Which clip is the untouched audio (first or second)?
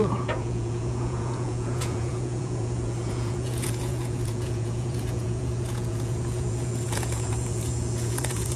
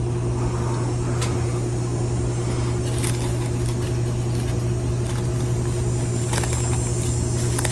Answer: second